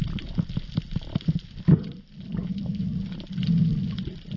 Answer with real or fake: fake